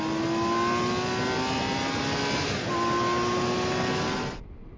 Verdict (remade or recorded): recorded